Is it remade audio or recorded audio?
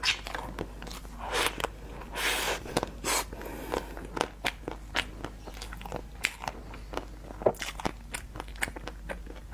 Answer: recorded